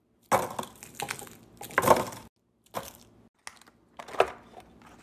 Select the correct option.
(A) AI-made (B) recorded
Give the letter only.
B